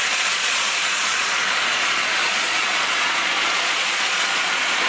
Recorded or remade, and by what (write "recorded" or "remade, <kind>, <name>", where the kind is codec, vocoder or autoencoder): remade, vocoder, Vocos